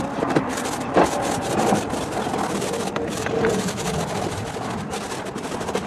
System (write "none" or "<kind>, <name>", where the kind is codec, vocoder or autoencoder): vocoder, BigVGAN v2